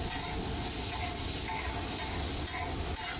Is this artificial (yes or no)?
no